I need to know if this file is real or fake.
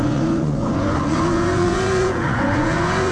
fake